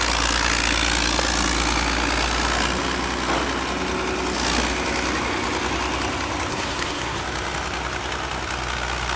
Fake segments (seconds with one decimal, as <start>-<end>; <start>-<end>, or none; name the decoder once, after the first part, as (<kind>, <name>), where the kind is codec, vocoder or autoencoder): 6.5-7.2 (codec, SNAC)